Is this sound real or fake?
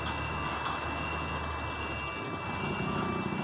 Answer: real